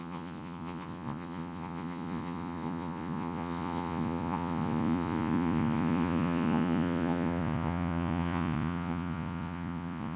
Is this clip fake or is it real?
fake